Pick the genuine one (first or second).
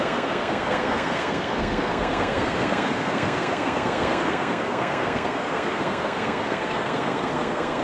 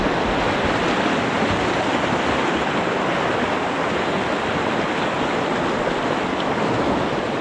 second